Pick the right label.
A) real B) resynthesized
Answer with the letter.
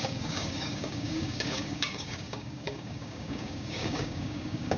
B